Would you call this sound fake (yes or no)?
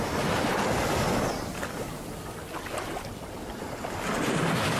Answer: no